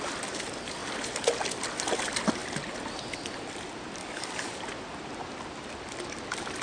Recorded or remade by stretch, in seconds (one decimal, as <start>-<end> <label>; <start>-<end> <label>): 0.0-4.0 recorded; 4.0-4.6 remade; 4.6-6.6 recorded